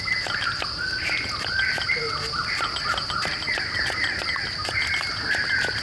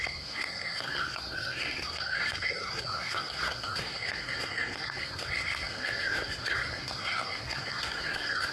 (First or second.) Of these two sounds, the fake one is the second